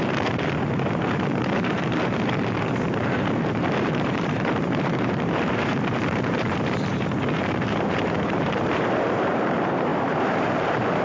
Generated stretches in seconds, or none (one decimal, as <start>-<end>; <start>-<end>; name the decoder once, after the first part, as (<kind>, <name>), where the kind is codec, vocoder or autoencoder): 0.0-11.0 (vocoder, BigVGAN v2)